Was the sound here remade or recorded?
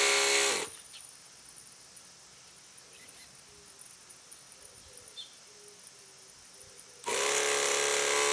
recorded